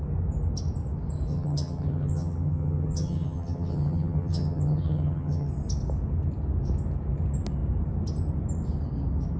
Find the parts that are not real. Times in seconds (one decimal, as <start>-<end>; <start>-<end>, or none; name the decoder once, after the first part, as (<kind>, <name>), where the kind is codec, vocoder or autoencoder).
1.3-5.5 (vocoder, HiFi-GAN)